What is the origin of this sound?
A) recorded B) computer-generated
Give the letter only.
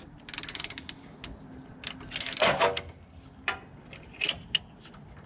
A